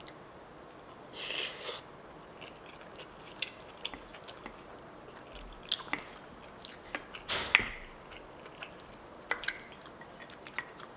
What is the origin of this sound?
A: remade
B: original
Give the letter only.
B